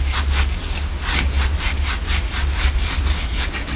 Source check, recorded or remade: recorded